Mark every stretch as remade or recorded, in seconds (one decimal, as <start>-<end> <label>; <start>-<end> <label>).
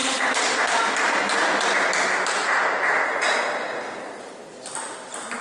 0.0-0.8 remade; 0.8-5.4 recorded